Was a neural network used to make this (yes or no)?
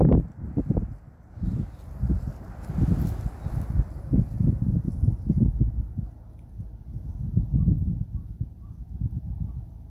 no